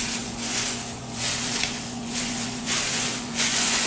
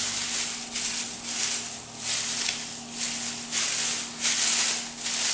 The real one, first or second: second